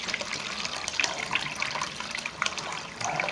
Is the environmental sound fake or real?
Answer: real